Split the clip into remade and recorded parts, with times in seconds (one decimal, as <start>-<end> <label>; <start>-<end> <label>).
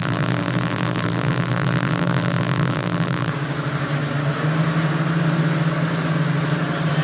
0.0-3.3 remade; 3.3-7.0 recorded